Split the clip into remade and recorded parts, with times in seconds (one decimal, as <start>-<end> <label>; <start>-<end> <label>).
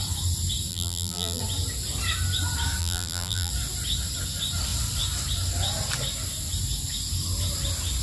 0.0-0.7 recorded; 0.7-1.4 remade; 1.4-2.8 recorded; 2.8-3.5 remade; 3.5-8.0 recorded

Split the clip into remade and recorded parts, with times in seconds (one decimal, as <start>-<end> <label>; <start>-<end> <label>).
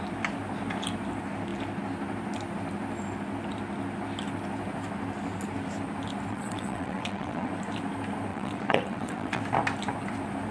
0.0-6.3 recorded; 6.3-7.5 remade; 7.5-8.3 recorded; 8.3-9.4 remade; 9.4-10.5 recorded